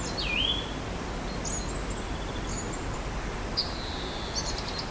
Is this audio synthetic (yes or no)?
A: no